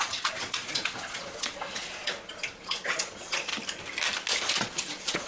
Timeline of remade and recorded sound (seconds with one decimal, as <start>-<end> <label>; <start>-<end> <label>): 0.0-3.5 remade; 3.5-4.6 recorded; 4.6-5.3 remade